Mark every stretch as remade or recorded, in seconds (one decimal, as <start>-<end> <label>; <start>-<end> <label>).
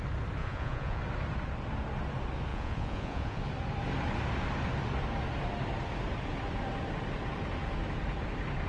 0.0-0.4 recorded; 0.4-1.0 remade; 1.0-2.5 recorded; 2.5-3.4 remade; 3.4-8.7 recorded